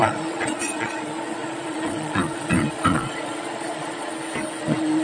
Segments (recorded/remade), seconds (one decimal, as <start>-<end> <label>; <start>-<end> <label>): 0.0-4.1 remade; 4.1-4.6 recorded; 4.6-5.0 remade